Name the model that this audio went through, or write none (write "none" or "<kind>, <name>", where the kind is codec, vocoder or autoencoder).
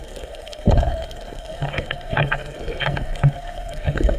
codec, SNAC